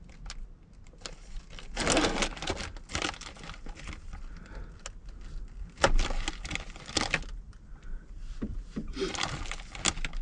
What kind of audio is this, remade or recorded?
recorded